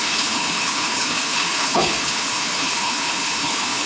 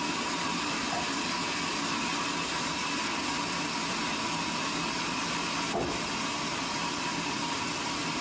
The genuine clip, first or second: second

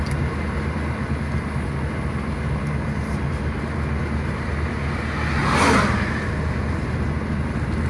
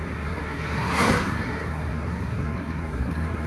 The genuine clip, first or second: first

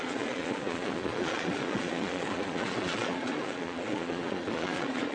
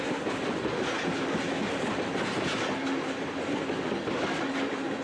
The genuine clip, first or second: second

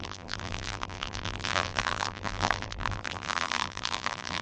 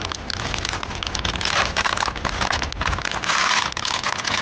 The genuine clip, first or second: second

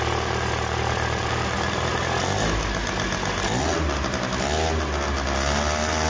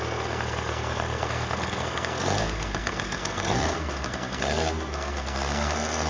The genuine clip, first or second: first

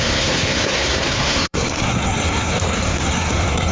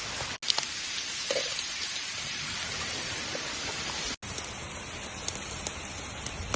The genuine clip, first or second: second